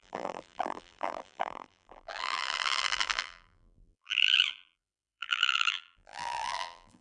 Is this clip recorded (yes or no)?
no